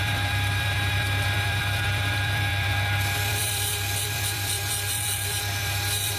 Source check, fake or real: fake